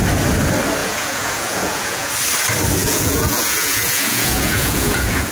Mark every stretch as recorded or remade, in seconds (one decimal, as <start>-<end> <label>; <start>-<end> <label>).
0.0-0.8 recorded; 0.8-2.1 remade; 2.1-2.8 recorded; 2.8-5.3 remade